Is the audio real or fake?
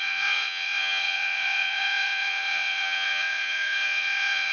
fake